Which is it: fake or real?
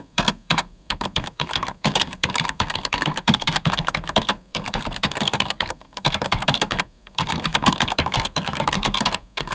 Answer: fake